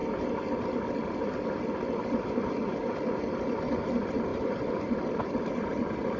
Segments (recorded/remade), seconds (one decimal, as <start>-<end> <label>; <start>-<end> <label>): 0.0-6.2 recorded